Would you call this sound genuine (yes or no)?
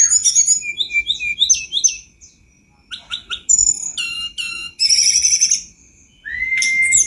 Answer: yes